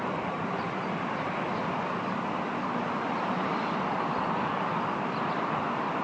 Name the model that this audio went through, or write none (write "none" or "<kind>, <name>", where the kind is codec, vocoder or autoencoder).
none